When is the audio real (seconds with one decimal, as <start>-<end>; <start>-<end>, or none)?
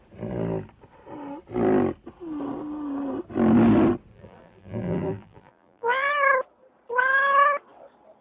0.0-4.1; 6.1-8.2